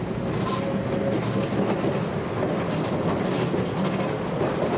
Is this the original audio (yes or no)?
yes